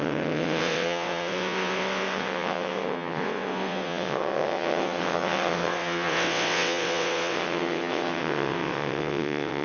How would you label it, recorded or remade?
remade